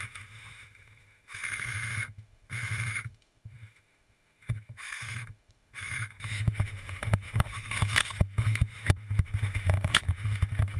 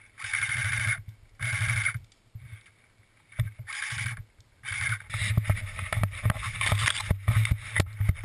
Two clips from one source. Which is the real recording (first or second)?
second